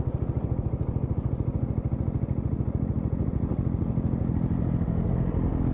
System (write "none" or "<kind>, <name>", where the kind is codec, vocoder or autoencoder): none